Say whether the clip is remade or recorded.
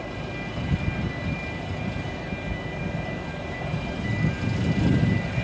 recorded